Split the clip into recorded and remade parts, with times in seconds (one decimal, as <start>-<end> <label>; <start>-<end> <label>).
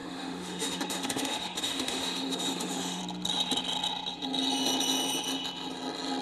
0.0-3.0 remade; 3.0-6.2 recorded